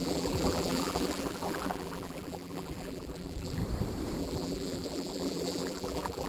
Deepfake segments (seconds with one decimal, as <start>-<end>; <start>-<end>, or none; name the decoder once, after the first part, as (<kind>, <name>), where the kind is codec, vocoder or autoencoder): 0.0-3.6 (vocoder, BigVGAN v2); 4.2-6.3

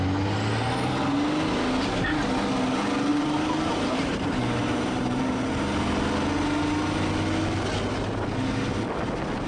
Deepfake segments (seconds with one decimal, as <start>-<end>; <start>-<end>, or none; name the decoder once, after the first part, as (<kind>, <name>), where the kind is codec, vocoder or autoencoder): 3.1-5.5 (vocoder, BigVGAN v2)

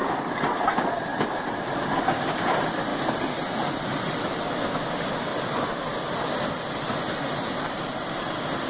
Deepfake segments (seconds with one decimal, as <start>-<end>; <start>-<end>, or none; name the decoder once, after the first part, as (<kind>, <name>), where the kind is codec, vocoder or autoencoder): 0.0-0.7 (vocoder, BigVGAN v2); 1.1-2.2; 2.9-4.8; 5.3-8.7

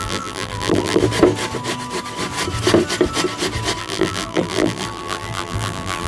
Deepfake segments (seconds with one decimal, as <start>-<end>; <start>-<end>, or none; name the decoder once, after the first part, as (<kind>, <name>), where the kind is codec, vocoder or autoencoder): 0.0-1.0 (vocoder, BigVGAN v2); 3.8-6.1

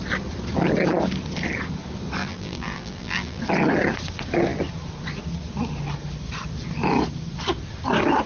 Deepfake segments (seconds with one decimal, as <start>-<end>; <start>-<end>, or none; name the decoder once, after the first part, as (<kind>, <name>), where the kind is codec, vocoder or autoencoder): 2.2-3.4 (vocoder, BigVGAN v2)